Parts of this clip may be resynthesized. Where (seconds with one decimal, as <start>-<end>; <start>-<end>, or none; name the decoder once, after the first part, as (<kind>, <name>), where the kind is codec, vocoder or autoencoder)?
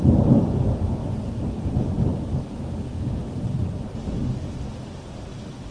0.0-1.0 (vocoder, BigVGAN v2); 1.7-5.7